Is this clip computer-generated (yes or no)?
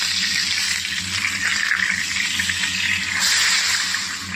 no